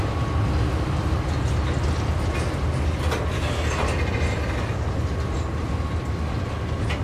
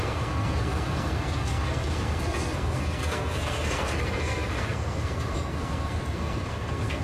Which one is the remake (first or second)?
second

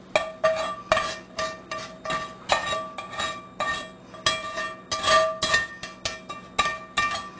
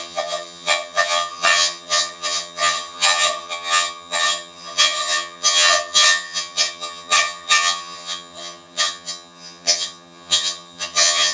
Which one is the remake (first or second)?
second